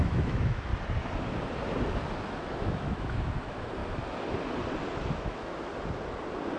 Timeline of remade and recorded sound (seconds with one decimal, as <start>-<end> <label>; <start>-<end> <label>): 0.0-0.7 remade; 0.7-2.2 recorded; 2.2-3.8 remade; 3.8-5.1 recorded; 5.1-5.7 remade; 5.7-6.6 recorded